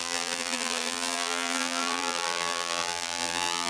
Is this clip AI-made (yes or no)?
yes